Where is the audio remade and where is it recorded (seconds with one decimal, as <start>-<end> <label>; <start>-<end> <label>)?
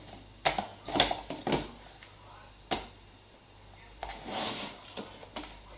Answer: 0.0-5.8 recorded